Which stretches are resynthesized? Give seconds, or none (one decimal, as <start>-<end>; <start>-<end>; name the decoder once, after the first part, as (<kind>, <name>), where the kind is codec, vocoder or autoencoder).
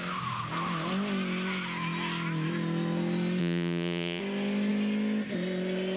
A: 3.4-4.2 (vocoder, Vocos)